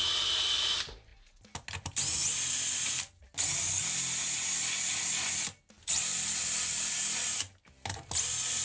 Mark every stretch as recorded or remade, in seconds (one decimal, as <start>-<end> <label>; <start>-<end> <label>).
0.0-8.6 recorded